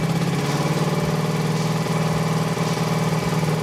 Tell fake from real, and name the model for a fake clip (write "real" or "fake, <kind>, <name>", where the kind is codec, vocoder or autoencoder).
real